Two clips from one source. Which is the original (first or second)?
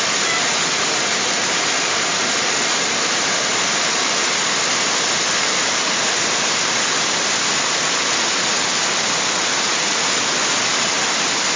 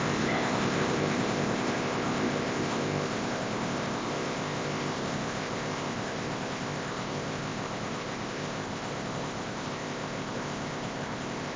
first